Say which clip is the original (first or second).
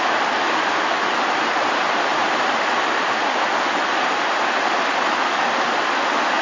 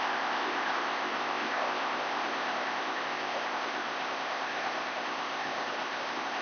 first